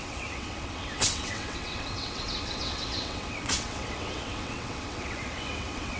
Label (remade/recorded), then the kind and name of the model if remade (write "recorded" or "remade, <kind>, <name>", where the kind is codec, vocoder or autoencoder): remade, vocoder, WaveNeXt